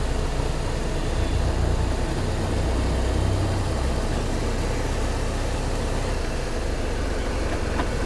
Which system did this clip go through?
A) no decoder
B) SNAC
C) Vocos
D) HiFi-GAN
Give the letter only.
A